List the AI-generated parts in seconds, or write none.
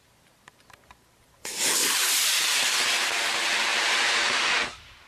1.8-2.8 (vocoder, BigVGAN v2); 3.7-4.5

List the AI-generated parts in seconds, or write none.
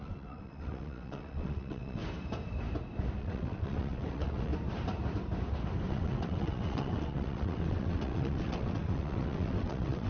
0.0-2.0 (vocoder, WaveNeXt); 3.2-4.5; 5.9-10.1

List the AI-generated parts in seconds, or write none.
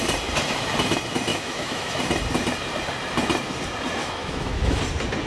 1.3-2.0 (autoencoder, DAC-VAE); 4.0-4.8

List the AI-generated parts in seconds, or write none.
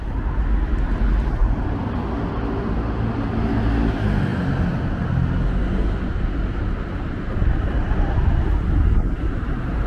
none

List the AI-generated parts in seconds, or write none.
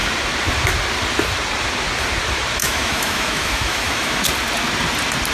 2.6-4.2 (autoencoder, DAC-VAE)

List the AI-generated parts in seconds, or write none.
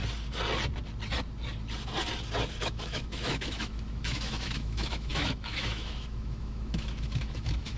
2.6-7.8 (autoencoder, DAC-VAE)